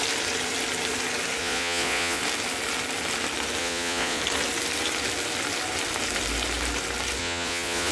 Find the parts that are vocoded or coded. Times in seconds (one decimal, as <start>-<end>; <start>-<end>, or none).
1.4-2.2; 3.6-4.2; 7.2-7.9